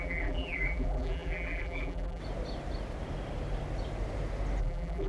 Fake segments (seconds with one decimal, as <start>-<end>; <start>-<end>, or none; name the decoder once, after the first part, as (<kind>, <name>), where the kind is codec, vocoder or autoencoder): 0.0-2.2 (vocoder, BigVGAN v2); 4.6-5.1